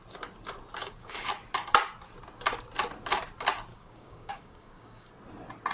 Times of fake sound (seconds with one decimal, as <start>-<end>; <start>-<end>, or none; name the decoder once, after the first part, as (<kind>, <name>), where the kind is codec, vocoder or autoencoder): 0.8-1.3 (codec, DAC); 3.7-5.1